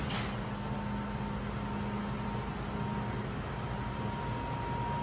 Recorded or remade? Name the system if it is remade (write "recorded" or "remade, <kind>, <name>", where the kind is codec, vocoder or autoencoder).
recorded